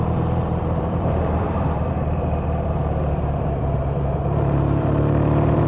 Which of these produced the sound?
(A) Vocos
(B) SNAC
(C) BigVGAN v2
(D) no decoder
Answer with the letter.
C